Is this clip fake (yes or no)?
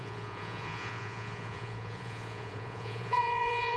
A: yes